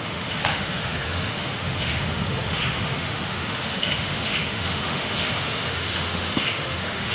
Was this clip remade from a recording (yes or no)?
yes